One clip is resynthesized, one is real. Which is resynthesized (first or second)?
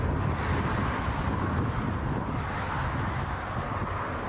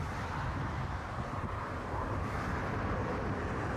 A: second